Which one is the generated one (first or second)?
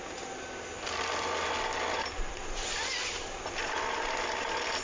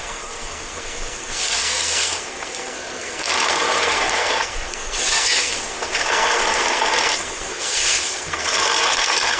second